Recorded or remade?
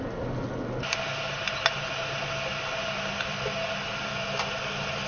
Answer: recorded